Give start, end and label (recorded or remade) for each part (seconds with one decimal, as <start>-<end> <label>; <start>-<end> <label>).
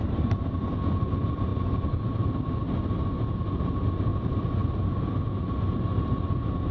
0.0-6.7 recorded